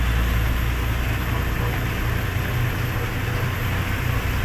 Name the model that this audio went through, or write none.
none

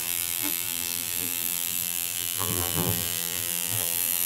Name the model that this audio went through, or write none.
vocoder, BigVGAN v2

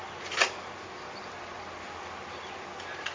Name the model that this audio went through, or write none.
none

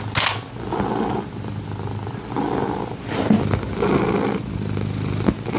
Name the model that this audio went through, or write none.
none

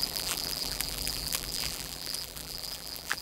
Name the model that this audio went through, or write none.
vocoder, BigVGAN v2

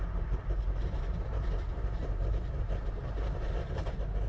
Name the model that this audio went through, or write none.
vocoder, BigVGAN v2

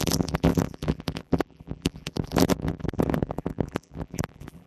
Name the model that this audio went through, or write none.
vocoder, BigVGAN v2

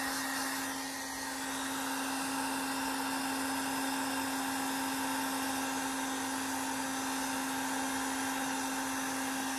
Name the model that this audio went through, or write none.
none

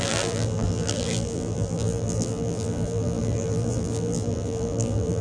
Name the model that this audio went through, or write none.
vocoder, BigVGAN v2